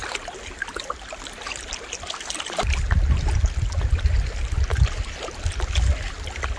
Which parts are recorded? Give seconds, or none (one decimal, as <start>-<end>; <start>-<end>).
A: 0.0-6.6

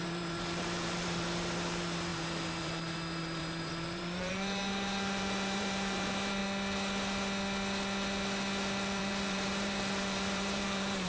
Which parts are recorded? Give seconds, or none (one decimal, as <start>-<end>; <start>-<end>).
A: 6.4-9.0